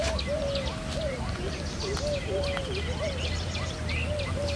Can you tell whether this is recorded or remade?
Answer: recorded